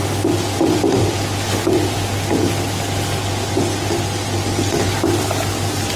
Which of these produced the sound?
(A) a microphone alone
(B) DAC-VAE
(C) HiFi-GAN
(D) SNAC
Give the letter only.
A